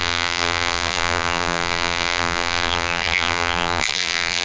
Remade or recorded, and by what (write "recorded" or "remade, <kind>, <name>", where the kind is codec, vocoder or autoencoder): remade, vocoder, BigVGAN v2